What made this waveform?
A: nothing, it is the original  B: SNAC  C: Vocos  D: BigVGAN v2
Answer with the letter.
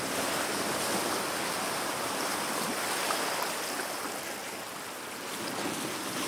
A